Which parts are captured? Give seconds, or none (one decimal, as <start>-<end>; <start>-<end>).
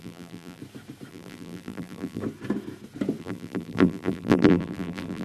0.6-1.1; 2.2-3.2